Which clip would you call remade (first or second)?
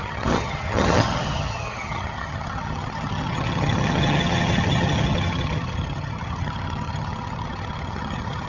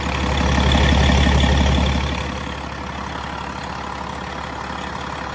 first